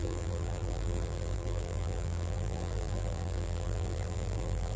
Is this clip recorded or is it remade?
remade